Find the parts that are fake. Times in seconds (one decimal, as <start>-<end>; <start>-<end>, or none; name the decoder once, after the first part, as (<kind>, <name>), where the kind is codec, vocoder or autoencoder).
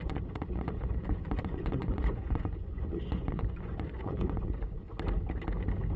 0.0-4.9 (vocoder, Vocos)